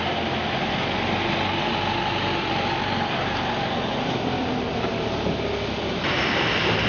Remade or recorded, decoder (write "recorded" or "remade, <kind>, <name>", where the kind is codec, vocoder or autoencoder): recorded